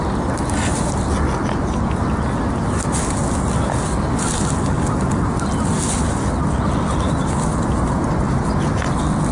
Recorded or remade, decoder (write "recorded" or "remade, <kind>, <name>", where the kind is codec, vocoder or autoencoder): recorded